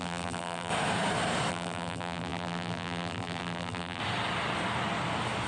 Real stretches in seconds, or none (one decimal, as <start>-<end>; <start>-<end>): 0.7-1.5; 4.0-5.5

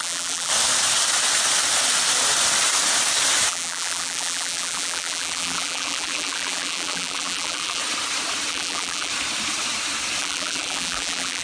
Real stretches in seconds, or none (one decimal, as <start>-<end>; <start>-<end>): 0.5-3.5; 7.8-8.5; 9.1-10.2

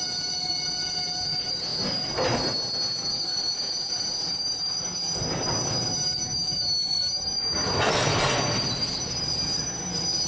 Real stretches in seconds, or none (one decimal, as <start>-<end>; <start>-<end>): 0.0-10.3

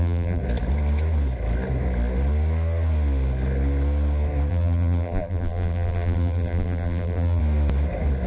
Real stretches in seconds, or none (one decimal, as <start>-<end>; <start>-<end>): 0.4-4.5; 7.4-8.3

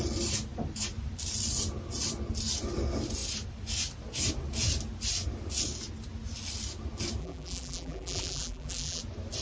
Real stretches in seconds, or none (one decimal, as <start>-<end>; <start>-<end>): 0.0-7.2; 9.0-9.4